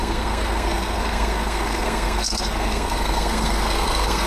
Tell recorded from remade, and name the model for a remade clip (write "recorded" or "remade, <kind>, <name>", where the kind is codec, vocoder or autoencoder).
remade, codec, SNAC